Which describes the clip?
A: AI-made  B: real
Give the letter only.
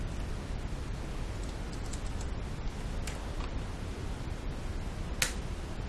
B